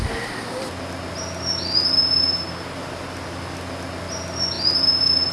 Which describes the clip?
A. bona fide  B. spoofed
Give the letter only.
A